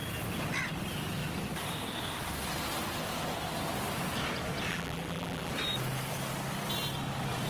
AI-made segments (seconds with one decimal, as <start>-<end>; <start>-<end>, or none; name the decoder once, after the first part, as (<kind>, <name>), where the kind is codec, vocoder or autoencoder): 4.7-5.5 (vocoder, BigVGAN v2)